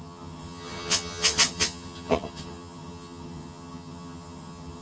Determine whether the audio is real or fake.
fake